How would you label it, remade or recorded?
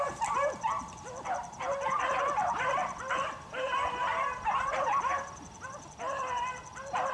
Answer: recorded